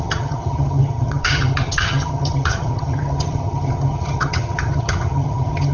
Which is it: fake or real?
fake